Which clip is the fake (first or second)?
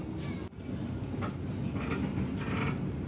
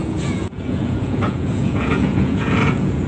second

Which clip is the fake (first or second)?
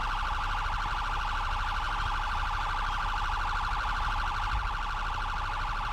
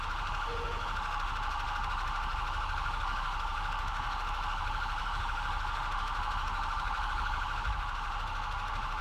second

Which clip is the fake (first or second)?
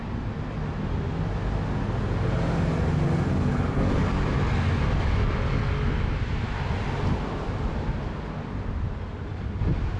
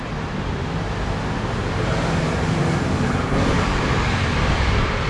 second